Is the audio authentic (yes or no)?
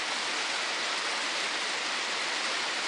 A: yes